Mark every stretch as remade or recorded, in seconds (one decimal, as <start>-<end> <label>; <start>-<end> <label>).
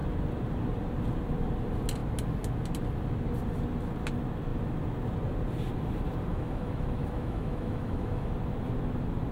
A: 0.0-6.3 recorded; 6.3-8.3 remade; 8.3-9.3 recorded